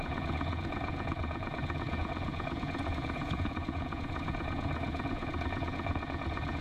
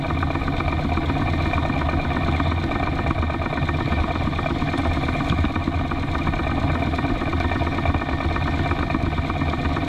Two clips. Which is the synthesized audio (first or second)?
first